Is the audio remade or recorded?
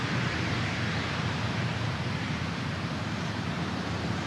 remade